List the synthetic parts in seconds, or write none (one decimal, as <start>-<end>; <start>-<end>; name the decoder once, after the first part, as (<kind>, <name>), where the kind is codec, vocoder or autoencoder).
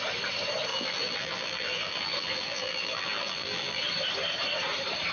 0.7-3.8 (vocoder, BigVGAN v2)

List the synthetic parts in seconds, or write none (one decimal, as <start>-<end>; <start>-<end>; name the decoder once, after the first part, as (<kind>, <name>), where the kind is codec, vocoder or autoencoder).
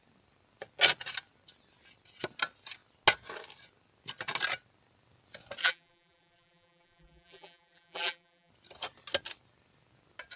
5.6-8.5 (vocoder, BigVGAN v2)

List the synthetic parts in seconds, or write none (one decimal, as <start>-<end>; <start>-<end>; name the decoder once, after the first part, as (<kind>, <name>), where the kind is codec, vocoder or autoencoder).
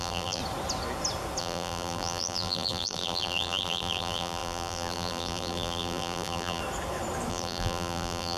0.0-0.4 (vocoder, BigVGAN v2); 1.4-6.6; 7.3-8.4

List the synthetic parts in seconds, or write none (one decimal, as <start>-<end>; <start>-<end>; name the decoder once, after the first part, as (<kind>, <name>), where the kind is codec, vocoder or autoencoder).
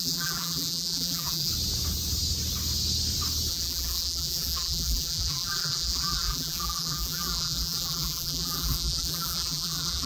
0.0-1.5 (vocoder, BigVGAN v2); 3.5-10.1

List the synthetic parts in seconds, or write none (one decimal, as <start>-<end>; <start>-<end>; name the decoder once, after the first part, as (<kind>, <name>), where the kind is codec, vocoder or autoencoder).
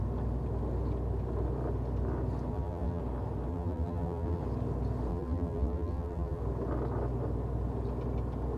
2.5-3.0 (vocoder, BigVGAN v2); 3.5-4.4; 5.1-6.4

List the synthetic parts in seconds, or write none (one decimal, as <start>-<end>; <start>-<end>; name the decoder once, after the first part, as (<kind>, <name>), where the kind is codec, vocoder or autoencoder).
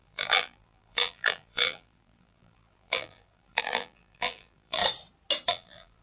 0.0-4.8 (vocoder, BigVGAN v2); 5.5-6.0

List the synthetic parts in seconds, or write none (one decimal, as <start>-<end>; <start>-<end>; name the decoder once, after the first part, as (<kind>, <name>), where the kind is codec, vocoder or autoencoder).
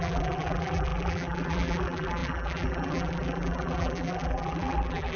0.0-5.2 (vocoder, BigVGAN v2)